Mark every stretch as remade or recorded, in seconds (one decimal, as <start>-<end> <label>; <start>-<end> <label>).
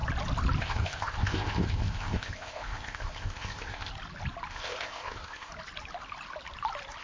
0.0-0.6 recorded; 0.6-3.9 remade; 3.9-4.5 recorded; 4.5-5.5 remade; 5.5-7.0 recorded